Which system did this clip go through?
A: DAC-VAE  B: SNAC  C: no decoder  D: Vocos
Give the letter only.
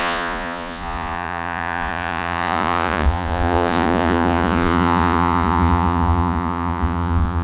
D